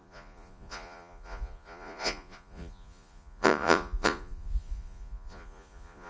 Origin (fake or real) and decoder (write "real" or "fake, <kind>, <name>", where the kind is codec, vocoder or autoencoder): fake, vocoder, Vocos